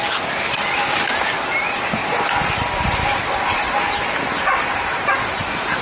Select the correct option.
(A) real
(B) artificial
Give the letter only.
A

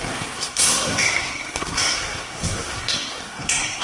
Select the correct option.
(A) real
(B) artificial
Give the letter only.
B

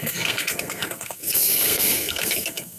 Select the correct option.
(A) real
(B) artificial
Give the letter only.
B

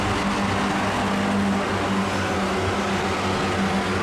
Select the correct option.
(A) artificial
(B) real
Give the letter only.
B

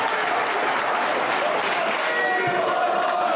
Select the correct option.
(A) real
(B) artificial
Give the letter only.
A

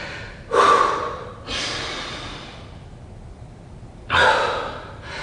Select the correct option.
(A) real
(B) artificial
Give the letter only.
A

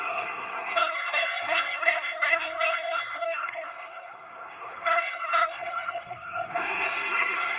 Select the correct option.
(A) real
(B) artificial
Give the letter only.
B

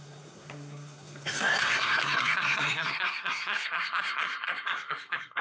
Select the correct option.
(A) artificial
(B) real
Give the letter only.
A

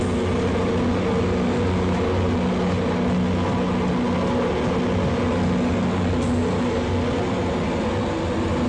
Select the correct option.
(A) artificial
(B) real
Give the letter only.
B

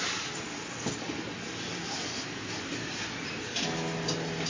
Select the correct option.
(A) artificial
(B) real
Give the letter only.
B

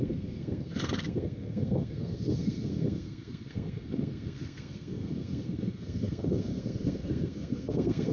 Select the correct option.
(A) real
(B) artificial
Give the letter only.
B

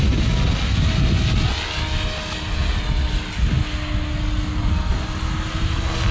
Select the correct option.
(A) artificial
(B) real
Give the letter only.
B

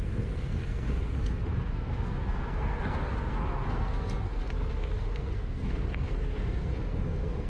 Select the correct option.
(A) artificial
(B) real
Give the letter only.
A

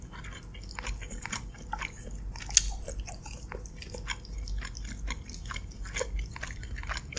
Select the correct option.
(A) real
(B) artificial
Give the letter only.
A